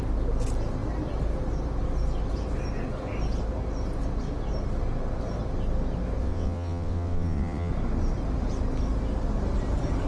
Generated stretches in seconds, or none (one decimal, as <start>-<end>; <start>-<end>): 6.2-7.7